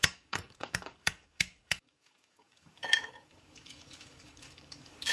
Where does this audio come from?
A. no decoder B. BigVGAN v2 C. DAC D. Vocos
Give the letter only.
C